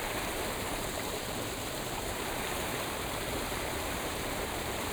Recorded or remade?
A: remade